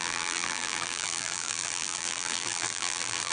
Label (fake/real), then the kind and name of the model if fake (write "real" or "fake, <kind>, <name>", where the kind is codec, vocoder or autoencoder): fake, vocoder, BigVGAN v2